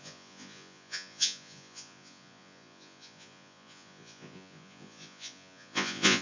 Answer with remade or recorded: remade